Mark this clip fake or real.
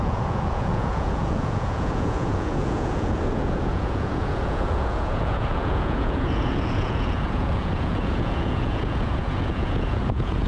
fake